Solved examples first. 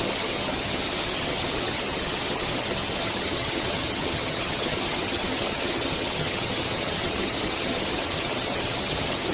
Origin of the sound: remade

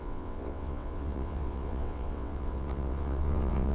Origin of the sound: remade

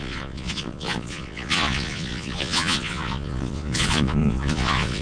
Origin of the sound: remade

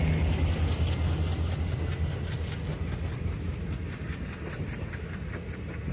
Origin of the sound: recorded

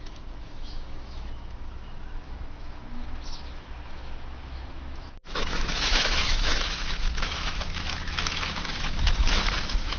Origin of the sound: remade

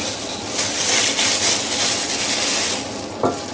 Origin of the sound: recorded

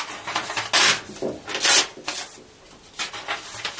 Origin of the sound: recorded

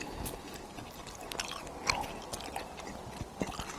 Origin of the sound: recorded